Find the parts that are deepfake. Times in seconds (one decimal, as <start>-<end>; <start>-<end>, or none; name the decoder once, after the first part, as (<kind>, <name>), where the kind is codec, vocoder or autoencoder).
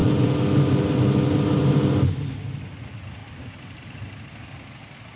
none